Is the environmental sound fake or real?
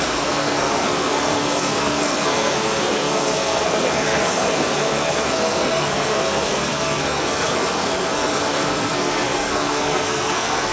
fake